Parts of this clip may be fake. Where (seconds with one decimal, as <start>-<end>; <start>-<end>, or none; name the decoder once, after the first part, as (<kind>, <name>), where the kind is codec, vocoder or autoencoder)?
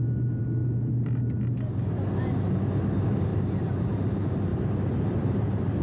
3.3-4.1 (vocoder, BigVGAN v2); 4.5-5.8